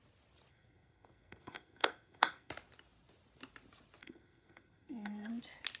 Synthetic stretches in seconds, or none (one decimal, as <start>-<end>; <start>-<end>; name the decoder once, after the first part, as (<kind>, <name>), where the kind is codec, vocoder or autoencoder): 0.5-2.5 (codec, SNAC); 4.0-5.3